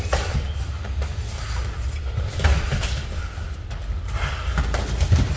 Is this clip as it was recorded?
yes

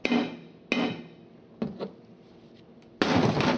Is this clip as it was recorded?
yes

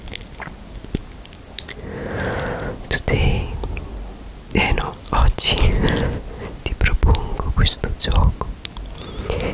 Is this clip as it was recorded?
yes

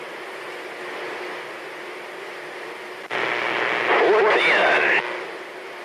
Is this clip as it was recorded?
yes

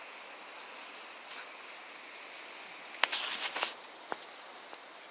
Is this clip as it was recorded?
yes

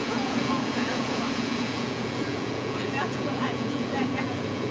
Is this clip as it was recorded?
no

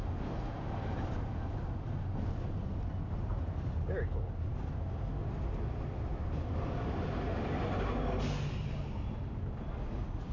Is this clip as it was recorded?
yes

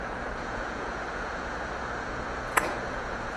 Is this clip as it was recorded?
no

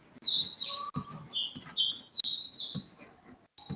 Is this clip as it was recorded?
yes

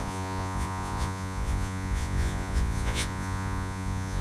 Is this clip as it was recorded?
no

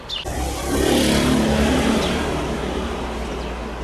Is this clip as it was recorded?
yes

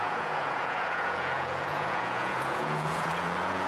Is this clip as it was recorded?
no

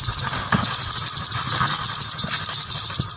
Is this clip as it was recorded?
yes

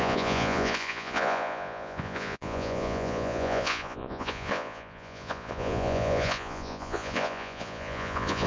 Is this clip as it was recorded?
no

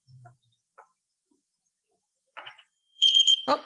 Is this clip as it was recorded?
no